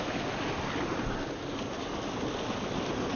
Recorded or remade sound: recorded